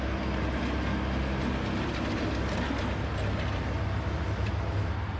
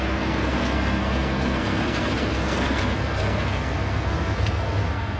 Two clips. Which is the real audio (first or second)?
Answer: first